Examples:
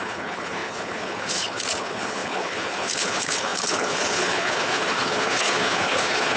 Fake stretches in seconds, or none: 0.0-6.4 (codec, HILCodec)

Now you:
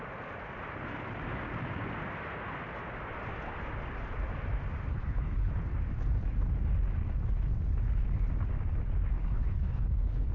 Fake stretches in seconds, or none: 4.9-5.5 (codec, HILCodec); 9.2-10.3

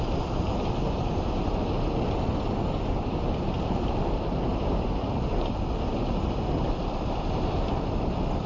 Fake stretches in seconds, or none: none

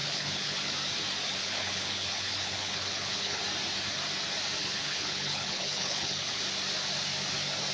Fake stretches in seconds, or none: 0.0-0.7 (codec, HILCodec); 1.4-3.4; 4.6-6.4